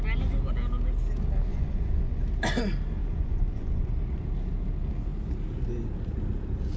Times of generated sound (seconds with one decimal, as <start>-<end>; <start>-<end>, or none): 1.5-2.2; 3.0-3.9